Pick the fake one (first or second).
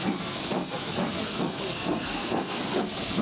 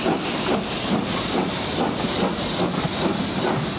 first